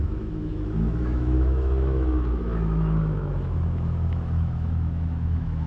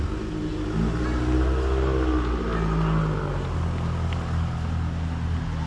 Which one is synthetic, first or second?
first